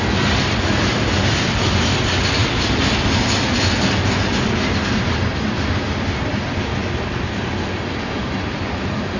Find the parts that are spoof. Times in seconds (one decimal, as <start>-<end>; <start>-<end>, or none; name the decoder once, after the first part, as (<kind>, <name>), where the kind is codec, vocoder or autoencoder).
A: none

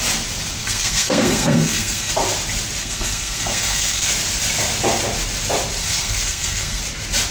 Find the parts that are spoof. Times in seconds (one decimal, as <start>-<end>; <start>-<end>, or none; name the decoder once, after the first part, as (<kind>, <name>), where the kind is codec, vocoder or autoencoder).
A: 0.6-2.1 (codec, SNAC); 2.8-4.1; 5.8-6.8

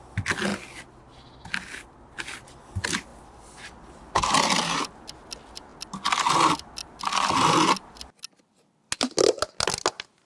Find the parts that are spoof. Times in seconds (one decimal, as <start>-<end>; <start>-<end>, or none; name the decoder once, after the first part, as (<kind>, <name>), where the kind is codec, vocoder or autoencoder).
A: none

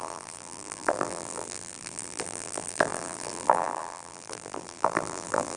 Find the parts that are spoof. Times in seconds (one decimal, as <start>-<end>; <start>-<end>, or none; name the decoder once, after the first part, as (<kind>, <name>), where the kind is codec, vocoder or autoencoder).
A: 0.0-5.6 (vocoder, BigVGAN v2)

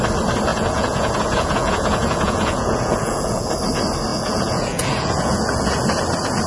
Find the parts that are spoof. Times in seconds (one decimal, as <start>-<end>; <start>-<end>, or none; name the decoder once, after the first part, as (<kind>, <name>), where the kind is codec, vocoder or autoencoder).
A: 0.5-3.5 (vocoder, Vocos); 4.1-5.8

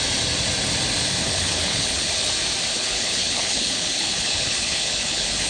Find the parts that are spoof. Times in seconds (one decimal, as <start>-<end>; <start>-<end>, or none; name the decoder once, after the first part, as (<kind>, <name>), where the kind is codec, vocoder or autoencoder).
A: 1.2-2.3 (codec, HILCodec); 2.7-5.5

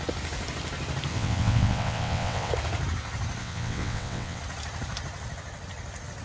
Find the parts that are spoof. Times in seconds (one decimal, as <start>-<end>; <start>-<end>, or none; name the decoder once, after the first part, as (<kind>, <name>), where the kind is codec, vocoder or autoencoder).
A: 1.1-2.5 (vocoder, WaveNeXt); 3.4-4.4